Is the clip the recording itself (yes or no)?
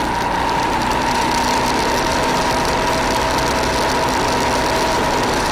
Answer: yes